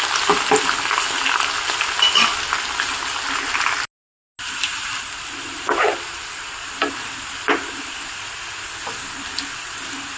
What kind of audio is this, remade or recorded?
recorded